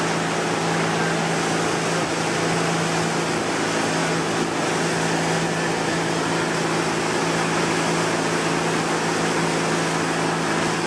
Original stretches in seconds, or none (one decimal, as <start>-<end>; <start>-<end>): 0.0-10.9